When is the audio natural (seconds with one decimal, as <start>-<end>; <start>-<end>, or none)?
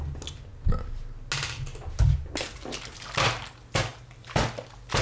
0.0-3.9; 4.4-5.0